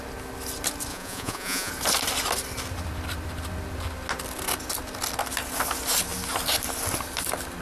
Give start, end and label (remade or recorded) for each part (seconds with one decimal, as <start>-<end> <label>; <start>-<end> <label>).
0.0-0.9 recorded; 0.9-1.7 remade; 1.7-7.6 recorded

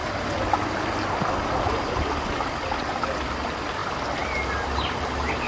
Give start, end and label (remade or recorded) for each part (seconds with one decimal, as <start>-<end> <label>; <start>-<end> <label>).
0.0-5.5 recorded

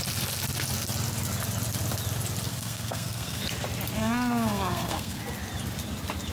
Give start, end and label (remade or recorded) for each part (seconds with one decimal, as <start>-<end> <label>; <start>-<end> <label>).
0.0-2.5 recorded; 2.5-3.4 remade; 3.4-4.0 recorded; 4.0-5.2 remade; 5.2-6.3 recorded